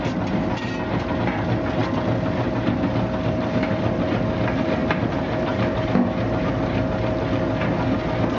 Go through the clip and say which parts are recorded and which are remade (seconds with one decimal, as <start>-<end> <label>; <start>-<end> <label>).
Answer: 0.0-8.4 recorded